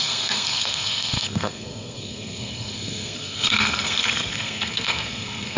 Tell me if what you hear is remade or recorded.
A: remade